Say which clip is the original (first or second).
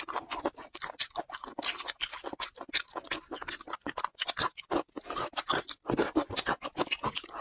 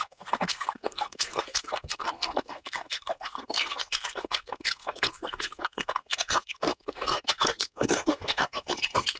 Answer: first